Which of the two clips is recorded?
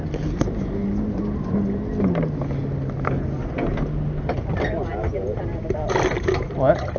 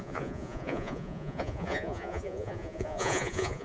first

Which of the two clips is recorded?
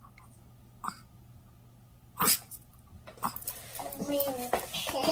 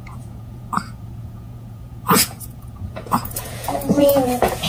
first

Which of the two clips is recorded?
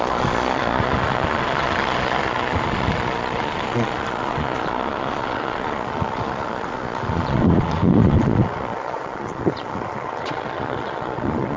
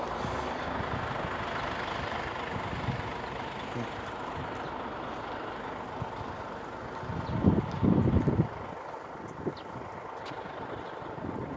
second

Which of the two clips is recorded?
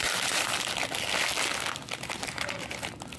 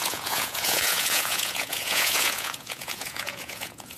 first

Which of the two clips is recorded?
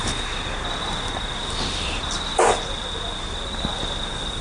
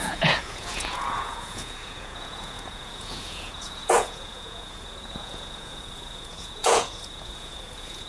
first